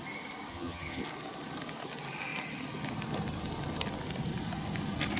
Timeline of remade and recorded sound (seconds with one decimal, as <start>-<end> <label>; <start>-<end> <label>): 0.0-0.5 recorded; 0.5-1.0 remade; 1.0-5.2 recorded